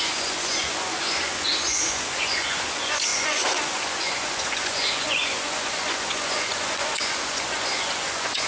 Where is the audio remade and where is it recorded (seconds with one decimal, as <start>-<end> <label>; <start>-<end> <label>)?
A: 0.0-8.5 remade